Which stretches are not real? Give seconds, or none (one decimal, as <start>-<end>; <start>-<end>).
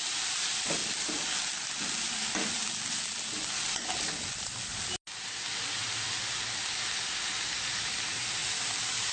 0.0-0.8; 4.3-4.7; 7.8-8.4